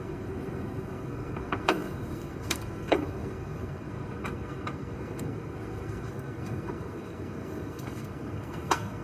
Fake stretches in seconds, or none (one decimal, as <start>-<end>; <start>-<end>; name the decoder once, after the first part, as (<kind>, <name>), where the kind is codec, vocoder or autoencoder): 0.0-9.0 (codec, SNAC)

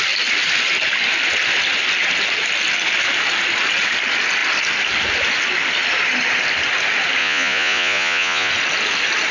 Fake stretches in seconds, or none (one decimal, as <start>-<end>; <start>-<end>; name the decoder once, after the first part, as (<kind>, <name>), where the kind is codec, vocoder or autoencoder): 7.2-8.5 (vocoder, Vocos)

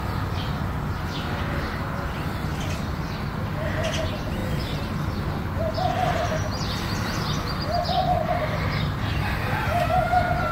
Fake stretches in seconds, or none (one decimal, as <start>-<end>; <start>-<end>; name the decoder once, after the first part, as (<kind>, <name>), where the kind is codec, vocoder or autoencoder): none

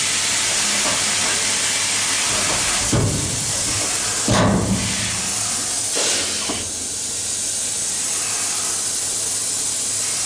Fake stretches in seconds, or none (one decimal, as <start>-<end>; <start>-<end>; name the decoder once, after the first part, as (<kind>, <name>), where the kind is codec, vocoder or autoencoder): none

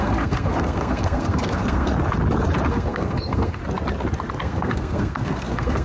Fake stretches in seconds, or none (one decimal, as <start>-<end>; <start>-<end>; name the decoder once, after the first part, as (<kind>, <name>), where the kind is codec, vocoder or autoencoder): 0.0-1.9 (codec, SNAC); 2.7-3.6; 4.4-5.8

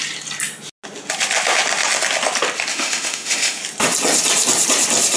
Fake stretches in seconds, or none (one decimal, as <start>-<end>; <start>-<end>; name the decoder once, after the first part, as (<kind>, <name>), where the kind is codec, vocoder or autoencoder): 2.7-3.6 (autoencoder, DAC-VAE)

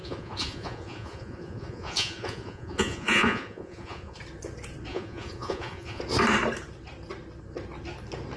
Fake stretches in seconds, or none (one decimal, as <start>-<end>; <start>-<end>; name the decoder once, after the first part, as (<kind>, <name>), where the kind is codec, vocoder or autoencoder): 0.0-4.2 (vocoder, Vocos); 4.9-6.0

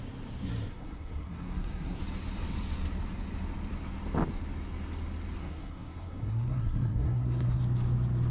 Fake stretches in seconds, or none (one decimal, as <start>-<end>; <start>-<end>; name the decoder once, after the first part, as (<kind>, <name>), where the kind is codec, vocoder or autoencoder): 0.7-2.0 (codec, SNAC); 5.4-7.6